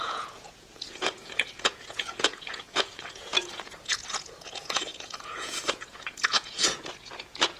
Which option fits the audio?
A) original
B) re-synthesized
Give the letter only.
B